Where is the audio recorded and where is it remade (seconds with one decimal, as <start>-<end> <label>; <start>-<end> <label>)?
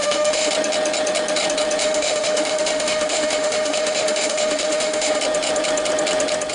0.0-0.5 remade; 0.5-1.8 recorded; 1.8-5.2 remade; 5.2-6.5 recorded